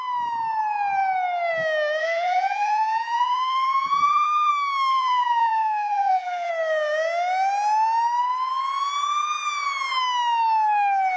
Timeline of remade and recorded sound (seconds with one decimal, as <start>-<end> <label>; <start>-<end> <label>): 0.0-2.0 recorded; 2.0-4.5 remade; 4.5-4.9 recorded; 4.9-6.5 remade; 6.5-11.2 recorded